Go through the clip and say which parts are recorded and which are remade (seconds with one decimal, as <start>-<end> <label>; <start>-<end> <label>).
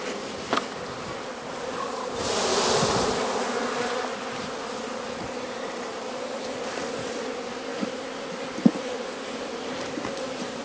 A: 0.0-10.6 recorded